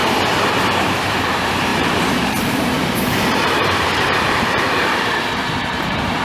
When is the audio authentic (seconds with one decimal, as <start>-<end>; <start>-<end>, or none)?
0.0-0.7